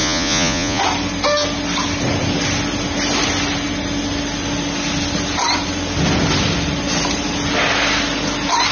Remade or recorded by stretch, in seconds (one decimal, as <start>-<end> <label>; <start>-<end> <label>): 0.0-0.8 remade; 0.8-8.7 recorded